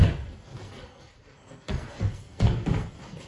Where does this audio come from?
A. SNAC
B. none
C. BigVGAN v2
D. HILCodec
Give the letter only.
A